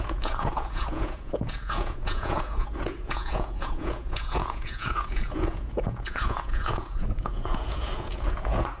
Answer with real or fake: fake